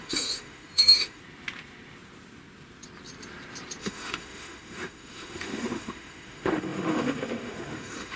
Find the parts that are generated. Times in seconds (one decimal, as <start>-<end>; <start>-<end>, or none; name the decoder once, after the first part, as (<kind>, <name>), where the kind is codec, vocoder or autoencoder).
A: 0.0-1.2 (autoencoder, DAC-VAE); 3.8-8.2